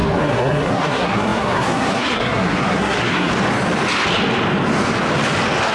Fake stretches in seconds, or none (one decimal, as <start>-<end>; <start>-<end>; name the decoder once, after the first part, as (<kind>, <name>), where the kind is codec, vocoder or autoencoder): 0.0-3.3 (codec, SNAC)